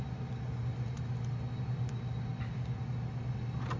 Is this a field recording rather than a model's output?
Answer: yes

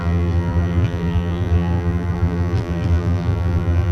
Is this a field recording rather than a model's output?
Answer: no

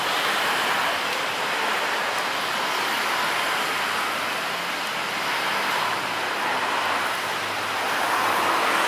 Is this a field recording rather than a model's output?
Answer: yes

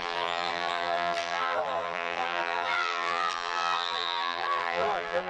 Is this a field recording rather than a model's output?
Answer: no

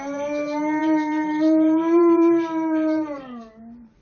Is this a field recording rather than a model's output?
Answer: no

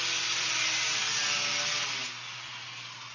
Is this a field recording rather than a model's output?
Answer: yes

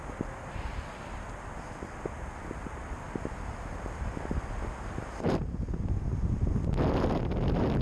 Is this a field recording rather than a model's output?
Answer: yes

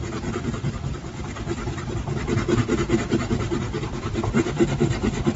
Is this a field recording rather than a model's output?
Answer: no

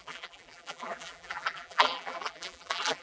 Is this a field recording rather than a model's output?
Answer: no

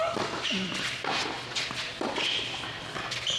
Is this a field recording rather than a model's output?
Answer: yes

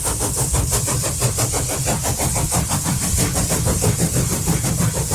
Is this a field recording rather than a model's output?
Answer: no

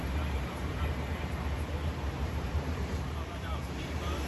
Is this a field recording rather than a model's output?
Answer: no